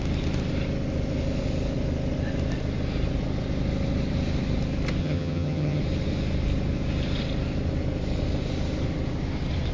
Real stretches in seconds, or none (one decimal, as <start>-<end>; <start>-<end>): 0.0-5.0; 5.8-9.7